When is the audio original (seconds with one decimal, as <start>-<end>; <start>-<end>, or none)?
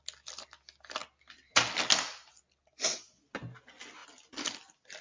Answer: 0.0-4.0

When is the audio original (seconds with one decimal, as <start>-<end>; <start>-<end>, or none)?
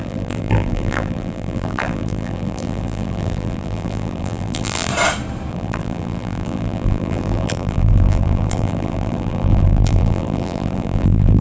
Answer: 4.9-5.5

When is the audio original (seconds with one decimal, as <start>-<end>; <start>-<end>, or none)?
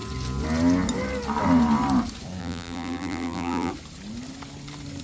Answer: 0.0-2.4; 3.7-5.0